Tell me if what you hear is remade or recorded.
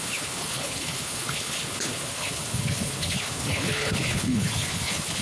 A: remade